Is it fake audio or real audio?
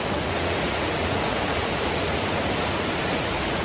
fake